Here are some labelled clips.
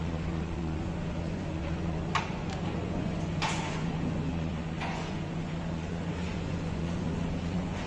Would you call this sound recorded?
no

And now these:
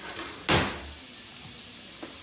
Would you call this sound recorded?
yes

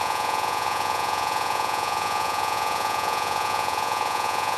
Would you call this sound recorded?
no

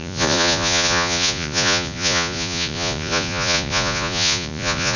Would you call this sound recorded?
no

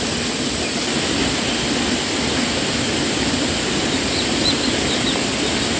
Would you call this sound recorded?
yes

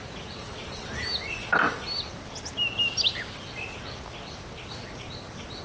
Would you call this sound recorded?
yes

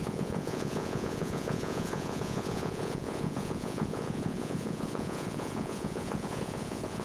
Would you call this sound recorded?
no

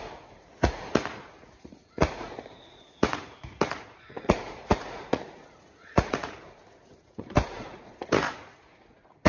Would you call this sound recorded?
no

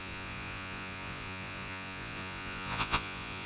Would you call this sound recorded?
no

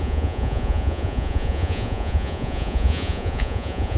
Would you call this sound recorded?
no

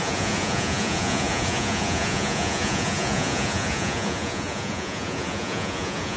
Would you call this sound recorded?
no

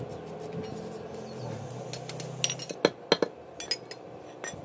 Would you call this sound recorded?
yes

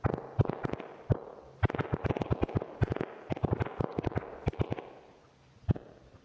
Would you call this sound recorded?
yes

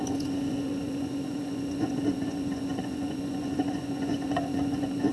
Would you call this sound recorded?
no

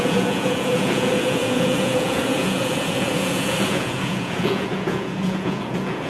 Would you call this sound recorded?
no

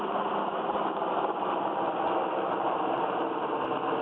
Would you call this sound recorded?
yes